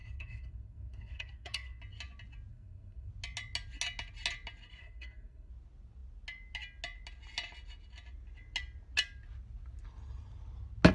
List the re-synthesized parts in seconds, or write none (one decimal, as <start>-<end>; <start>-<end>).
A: 0.0-1.8; 2.5-3.1; 4.8-5.5